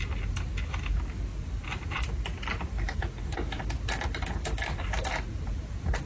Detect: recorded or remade recorded